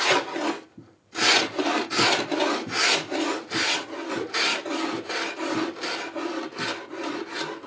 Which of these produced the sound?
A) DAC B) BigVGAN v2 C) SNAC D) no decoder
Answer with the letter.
D